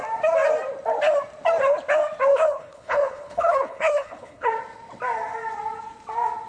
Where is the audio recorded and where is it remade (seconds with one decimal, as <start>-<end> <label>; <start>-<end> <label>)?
0.0-2.3 recorded; 2.3-4.5 remade; 4.5-6.5 recorded